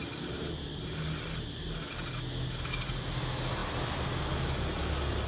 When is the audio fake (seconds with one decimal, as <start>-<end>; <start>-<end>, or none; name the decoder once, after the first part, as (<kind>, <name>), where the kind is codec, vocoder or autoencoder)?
none